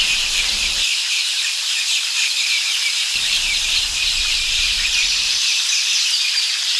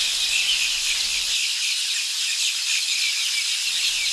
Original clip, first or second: second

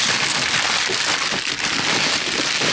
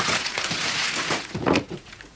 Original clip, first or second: first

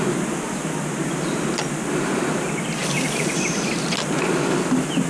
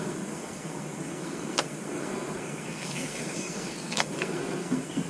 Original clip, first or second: first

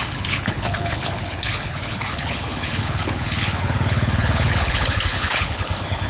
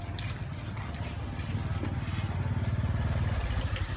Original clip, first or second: second